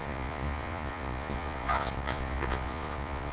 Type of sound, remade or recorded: remade